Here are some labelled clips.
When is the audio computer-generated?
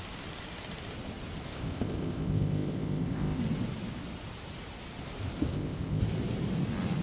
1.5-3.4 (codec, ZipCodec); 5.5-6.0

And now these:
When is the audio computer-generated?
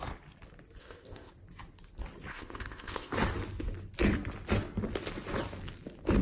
0.8-1.3 (codec, ZipCodec); 2.3-3.1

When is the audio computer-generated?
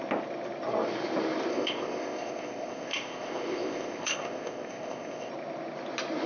1.5-5.3 (codec, ZipCodec)